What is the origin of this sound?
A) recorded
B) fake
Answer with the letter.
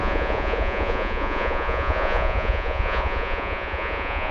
B